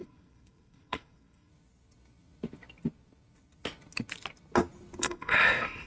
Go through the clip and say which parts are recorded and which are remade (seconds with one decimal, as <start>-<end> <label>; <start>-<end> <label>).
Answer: 0.0-1.5 remade; 1.5-5.0 recorded; 5.0-5.9 remade